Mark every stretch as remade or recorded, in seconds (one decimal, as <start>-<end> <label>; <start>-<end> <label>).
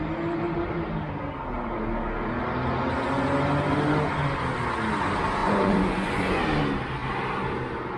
0.0-5.4 recorded; 5.4-6.4 remade; 6.4-8.0 recorded